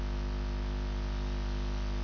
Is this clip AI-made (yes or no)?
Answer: no